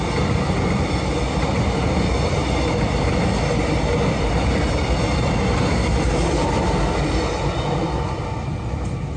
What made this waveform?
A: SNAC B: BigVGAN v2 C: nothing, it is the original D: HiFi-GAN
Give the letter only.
C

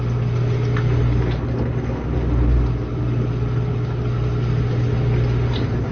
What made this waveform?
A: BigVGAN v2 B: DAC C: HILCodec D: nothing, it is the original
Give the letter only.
D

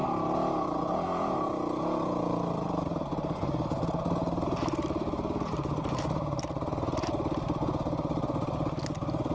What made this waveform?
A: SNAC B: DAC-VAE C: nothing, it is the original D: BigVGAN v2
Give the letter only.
C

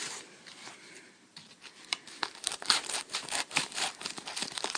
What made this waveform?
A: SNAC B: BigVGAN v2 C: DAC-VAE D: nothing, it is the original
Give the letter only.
B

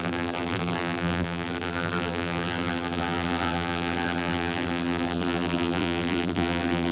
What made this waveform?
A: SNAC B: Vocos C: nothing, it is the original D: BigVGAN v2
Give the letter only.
D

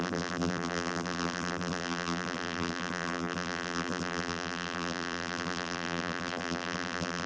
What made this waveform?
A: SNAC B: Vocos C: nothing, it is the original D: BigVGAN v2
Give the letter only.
D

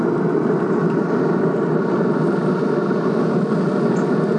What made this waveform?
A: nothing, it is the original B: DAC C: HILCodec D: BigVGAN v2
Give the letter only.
A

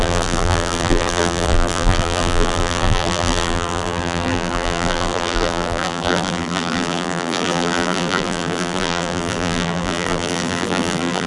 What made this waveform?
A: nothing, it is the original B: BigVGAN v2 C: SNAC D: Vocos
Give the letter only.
B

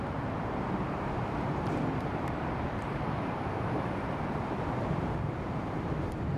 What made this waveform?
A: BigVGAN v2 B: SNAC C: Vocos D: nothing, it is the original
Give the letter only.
A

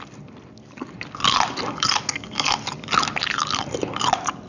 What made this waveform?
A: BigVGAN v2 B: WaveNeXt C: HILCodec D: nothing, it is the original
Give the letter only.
D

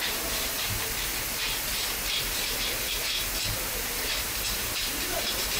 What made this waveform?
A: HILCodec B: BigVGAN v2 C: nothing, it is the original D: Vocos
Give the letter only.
B